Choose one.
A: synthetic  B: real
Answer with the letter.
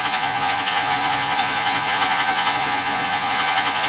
A